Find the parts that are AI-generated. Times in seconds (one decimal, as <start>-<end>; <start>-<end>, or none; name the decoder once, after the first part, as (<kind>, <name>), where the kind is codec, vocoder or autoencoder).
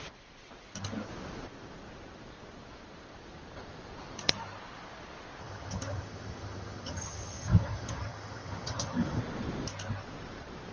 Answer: 5.4-9.2 (vocoder, HiFi-GAN)